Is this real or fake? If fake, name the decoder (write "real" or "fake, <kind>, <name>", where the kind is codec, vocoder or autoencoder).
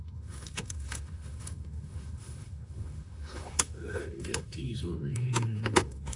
fake, autoencoder, DAC-VAE